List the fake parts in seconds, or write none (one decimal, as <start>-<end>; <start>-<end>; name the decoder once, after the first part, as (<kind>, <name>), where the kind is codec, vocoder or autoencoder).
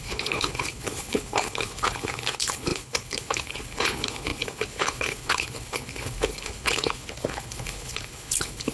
0.0-8.7 (codec, HILCodec)